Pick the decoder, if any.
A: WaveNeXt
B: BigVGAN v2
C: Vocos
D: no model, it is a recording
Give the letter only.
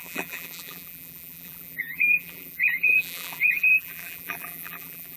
B